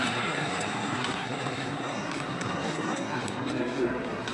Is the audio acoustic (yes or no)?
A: no